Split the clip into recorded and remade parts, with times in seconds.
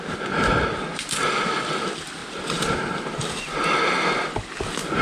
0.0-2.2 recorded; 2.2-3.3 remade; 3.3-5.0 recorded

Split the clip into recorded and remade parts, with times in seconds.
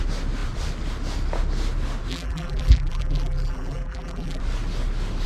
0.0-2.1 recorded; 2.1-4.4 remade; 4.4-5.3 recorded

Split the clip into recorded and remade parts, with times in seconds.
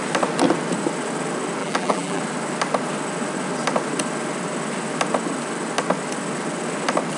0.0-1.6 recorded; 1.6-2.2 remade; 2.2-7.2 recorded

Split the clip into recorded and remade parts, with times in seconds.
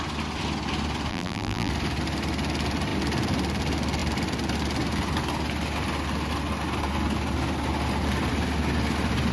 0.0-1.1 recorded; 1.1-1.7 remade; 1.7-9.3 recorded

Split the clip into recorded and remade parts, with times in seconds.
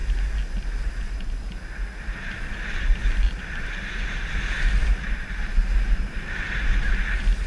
0.0-1.9 recorded; 1.9-6.4 remade; 6.4-7.5 recorded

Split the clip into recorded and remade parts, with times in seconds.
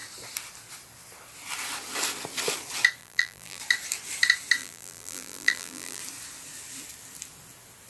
0.0-3.0 recorded; 3.0-3.6 remade; 3.6-4.6 recorded; 4.6-6.0 remade; 6.0-7.9 recorded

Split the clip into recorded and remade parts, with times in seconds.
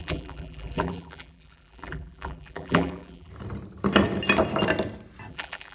0.0-3.3 remade; 3.3-5.3 recorded; 5.3-5.7 remade